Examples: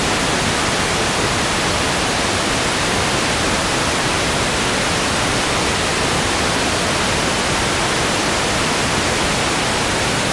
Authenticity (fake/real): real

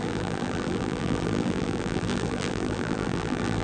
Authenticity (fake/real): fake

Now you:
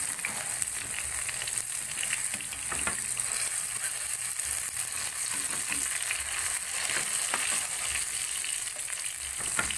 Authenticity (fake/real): real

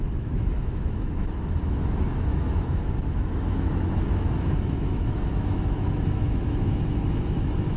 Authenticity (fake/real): fake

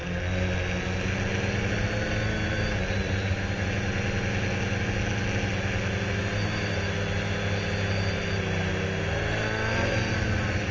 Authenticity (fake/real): real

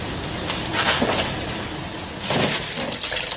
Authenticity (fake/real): real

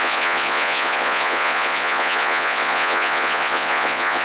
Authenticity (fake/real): fake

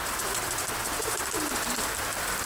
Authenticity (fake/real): fake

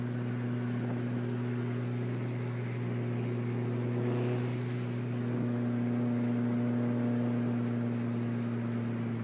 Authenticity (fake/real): real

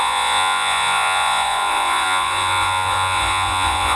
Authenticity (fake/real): fake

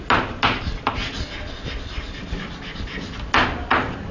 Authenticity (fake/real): real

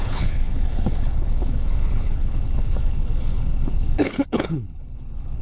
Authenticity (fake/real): fake